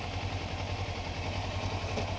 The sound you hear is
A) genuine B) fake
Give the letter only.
A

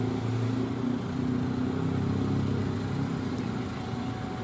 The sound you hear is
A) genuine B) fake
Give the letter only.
A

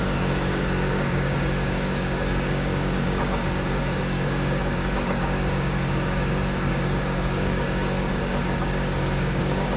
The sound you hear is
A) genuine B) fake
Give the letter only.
B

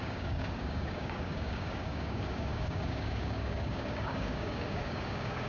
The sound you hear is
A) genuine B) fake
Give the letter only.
B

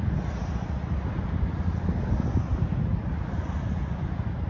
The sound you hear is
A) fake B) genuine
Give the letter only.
B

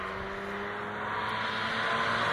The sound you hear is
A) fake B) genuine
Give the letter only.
B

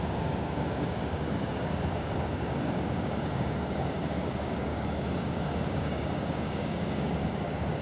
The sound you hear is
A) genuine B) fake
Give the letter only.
B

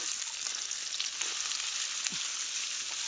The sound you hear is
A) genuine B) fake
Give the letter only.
A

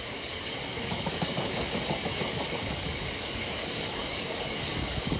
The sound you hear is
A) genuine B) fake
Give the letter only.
B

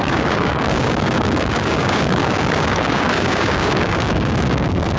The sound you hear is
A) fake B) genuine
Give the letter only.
A